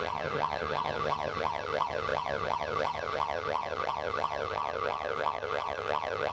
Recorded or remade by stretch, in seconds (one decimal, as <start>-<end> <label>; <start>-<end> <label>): 0.0-6.3 remade